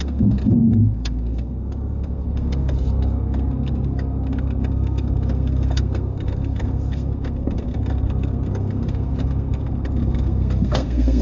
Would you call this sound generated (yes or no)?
yes